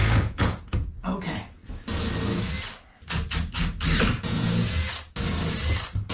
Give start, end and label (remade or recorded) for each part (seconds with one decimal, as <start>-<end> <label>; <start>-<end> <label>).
0.0-1.6 remade; 1.6-4.2 recorded; 4.2-4.9 remade; 4.9-6.1 recorded